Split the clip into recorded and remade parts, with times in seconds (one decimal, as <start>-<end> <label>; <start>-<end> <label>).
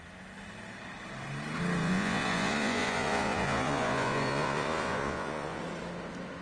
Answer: 0.0-1.8 recorded; 1.8-5.6 remade; 5.6-6.4 recorded